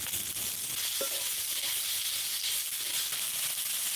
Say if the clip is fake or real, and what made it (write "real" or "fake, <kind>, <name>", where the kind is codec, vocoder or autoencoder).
real